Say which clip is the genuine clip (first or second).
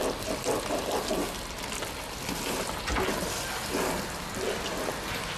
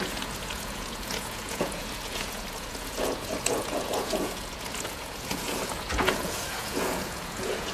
first